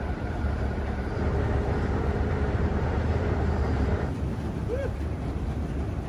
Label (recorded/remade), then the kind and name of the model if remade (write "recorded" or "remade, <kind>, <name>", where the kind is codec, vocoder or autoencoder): remade, vocoder, BigVGAN v2